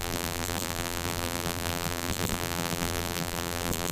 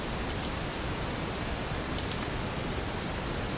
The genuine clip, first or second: second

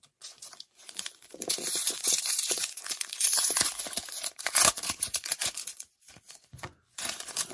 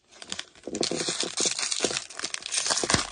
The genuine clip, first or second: second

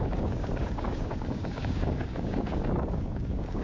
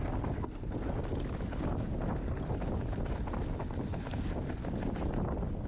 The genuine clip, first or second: second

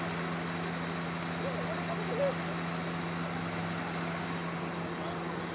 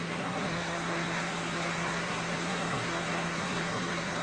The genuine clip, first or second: first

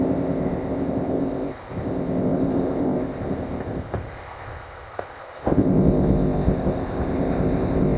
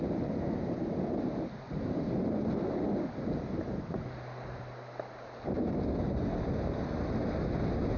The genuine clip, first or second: second